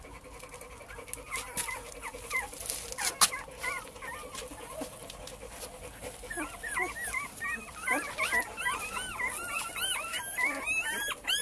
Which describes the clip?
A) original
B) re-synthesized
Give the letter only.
A